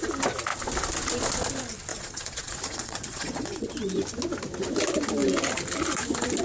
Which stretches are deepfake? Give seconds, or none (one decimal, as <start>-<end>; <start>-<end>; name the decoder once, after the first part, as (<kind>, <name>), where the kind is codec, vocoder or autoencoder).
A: 1.9-3.7 (vocoder, Vocos)